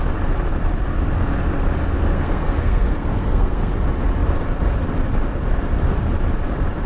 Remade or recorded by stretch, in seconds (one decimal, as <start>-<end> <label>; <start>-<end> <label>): 0.0-2.1 recorded; 2.1-3.7 remade; 3.7-6.9 recorded